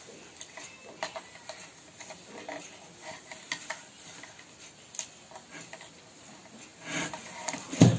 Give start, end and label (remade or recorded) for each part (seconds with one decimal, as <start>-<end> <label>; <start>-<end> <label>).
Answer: 0.0-8.0 recorded